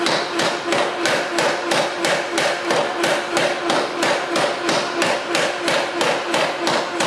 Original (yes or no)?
yes